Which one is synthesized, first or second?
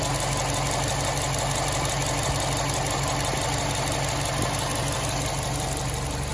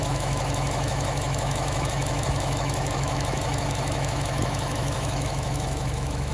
second